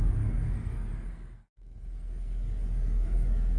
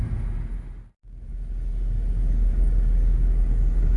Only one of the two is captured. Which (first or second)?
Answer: second